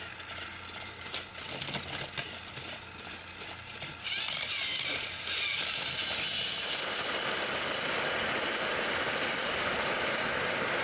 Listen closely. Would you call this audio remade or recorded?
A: recorded